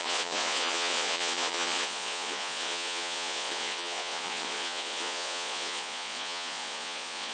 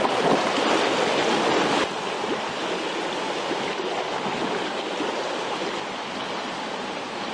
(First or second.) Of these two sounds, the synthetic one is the first